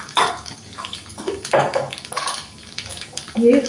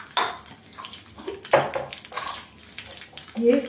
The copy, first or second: first